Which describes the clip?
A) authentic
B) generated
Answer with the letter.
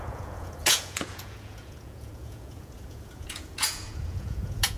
B